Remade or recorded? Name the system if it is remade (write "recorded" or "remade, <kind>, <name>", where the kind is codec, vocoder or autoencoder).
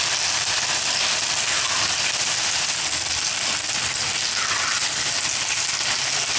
recorded